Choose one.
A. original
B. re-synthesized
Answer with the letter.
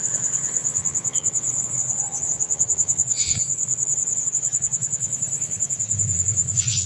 B